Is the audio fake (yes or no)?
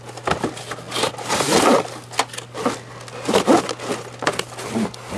no